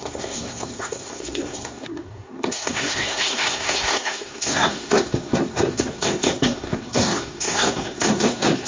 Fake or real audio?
fake